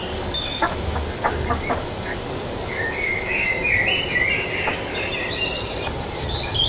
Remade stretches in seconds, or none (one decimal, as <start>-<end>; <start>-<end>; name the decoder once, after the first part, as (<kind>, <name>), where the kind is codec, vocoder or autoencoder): 0.0-3.8 (codec, DAC)